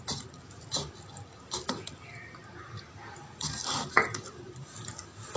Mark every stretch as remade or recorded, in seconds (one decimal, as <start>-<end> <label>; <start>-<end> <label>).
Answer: 0.0-1.3 recorded; 1.3-2.7 remade; 2.7-5.4 recorded